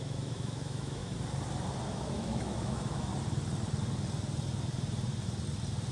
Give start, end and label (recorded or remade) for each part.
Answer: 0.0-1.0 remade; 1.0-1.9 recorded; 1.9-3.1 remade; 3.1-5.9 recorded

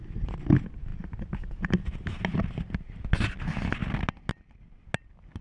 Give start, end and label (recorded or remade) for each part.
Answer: 0.0-5.4 recorded

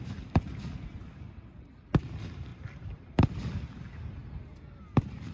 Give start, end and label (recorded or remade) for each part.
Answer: 0.0-2.5 recorded; 2.5-3.3 remade; 3.3-4.2 recorded; 4.2-5.3 remade